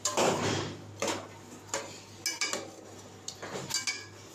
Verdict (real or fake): real